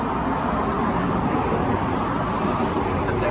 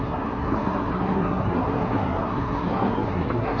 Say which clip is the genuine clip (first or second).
first